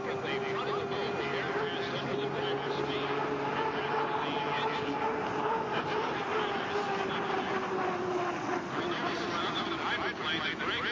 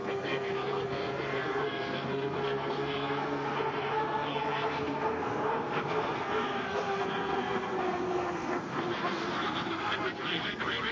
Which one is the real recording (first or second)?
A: first